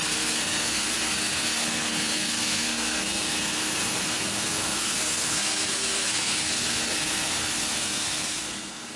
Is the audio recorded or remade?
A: remade